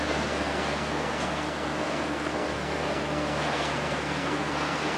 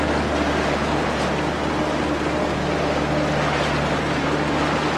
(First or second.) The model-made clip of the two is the first